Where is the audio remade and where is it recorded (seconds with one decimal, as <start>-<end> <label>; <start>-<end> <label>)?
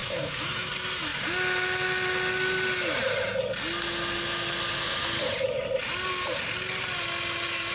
0.0-0.7 remade; 0.7-7.7 recorded